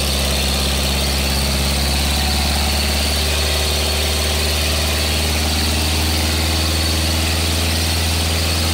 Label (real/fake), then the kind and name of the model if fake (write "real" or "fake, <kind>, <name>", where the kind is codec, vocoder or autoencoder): real